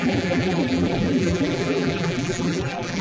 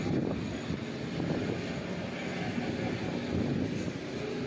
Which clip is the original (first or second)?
second